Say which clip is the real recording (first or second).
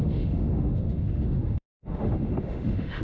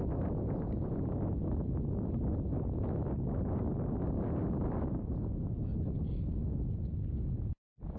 second